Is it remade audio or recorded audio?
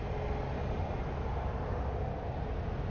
recorded